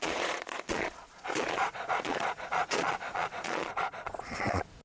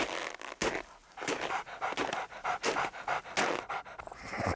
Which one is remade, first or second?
first